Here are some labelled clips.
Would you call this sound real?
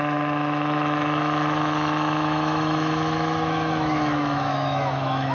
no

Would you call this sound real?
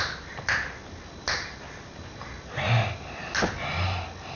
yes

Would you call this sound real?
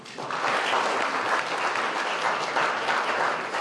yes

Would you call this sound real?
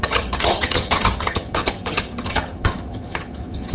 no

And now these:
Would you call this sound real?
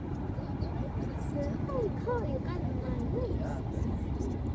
yes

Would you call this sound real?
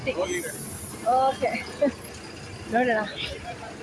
yes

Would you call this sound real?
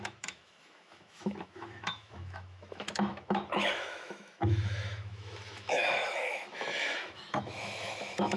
no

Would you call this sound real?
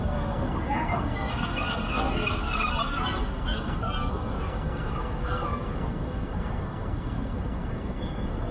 no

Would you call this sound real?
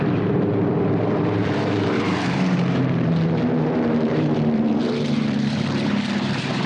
no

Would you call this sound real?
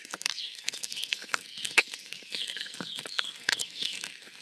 no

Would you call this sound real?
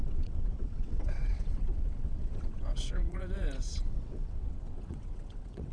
no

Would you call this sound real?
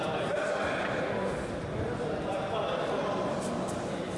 yes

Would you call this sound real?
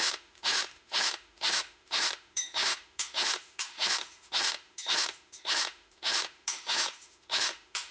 no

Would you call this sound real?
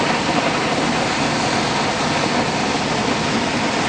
yes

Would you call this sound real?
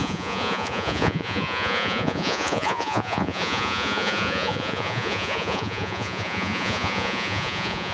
no